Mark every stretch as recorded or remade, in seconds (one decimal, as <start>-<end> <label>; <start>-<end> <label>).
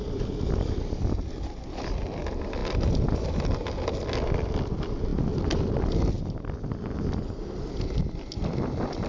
0.0-9.1 recorded